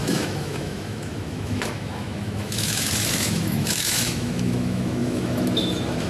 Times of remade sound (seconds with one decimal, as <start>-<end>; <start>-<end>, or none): 0.0-6.1